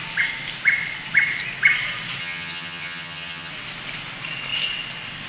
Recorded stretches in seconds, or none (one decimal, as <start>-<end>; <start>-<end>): 0.0-2.2; 3.5-5.3

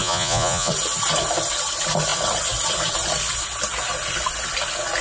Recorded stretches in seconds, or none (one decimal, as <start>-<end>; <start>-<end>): 0.7-5.0

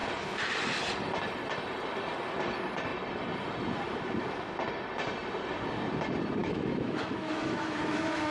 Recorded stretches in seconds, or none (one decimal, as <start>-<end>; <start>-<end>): 0.0-6.4